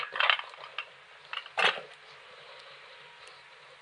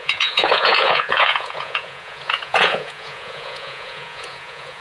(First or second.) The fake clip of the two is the second